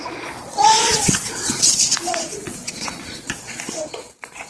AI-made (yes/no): yes